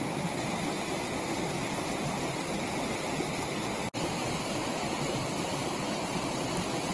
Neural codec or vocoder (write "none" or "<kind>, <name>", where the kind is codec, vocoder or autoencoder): none